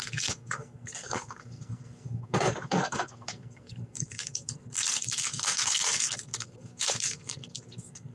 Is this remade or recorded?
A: remade